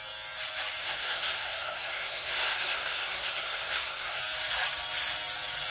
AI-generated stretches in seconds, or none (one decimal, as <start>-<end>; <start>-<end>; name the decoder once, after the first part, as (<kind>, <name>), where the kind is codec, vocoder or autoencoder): 0.8-4.2 (codec, SNAC)